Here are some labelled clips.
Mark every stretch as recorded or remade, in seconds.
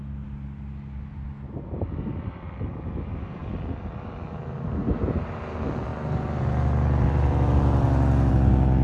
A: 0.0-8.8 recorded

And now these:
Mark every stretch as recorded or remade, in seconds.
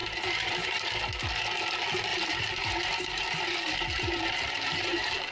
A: 0.0-0.9 remade; 0.9-2.1 recorded; 2.1-5.3 remade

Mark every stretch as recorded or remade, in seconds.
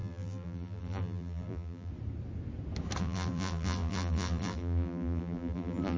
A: 0.0-1.9 remade; 1.9-3.0 recorded; 3.0-6.0 remade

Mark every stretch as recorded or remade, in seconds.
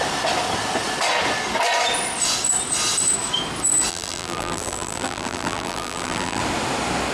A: 0.0-3.9 recorded; 3.9-6.4 remade; 6.4-7.1 recorded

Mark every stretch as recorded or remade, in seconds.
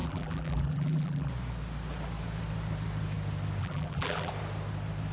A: 0.0-1.3 remade; 1.3-3.6 recorded; 3.6-4.3 remade; 4.3-5.1 recorded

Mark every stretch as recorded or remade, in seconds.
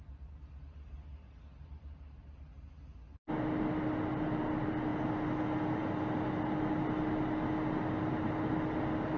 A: 0.0-9.2 recorded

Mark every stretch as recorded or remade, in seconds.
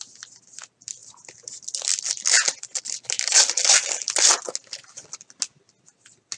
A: 0.0-6.4 recorded